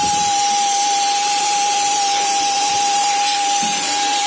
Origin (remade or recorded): remade